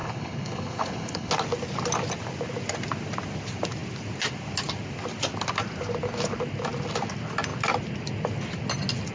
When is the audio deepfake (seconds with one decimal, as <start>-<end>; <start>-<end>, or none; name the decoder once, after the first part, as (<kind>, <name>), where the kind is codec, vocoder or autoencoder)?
0.0-1.3 (codec, HILCodec)